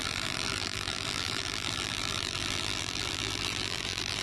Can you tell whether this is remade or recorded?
remade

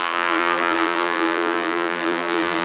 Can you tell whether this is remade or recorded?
remade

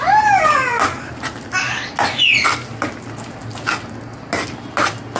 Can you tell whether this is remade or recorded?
recorded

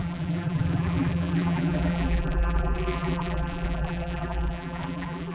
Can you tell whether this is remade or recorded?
remade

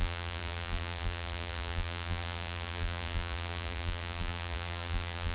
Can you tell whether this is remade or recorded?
remade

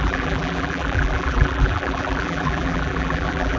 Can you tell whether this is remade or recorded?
remade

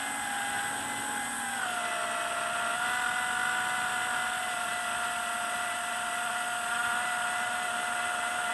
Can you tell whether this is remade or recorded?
recorded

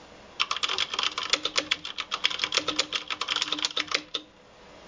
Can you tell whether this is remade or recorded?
recorded